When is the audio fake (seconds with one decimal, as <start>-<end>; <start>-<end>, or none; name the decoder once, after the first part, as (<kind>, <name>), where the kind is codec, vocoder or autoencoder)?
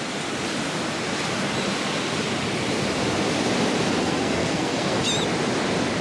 4.0-5.0 (codec, SNAC)